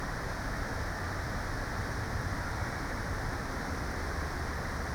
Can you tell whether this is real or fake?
real